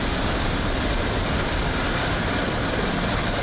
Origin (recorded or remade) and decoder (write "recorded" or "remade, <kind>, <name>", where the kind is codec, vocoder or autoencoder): recorded